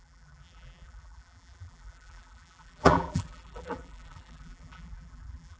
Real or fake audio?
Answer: fake